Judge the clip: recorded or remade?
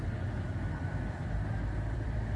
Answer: remade